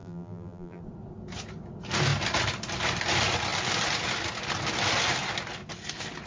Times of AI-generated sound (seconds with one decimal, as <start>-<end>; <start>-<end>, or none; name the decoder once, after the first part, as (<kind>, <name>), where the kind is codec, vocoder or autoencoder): 0.0-0.8 (vocoder, BigVGAN v2)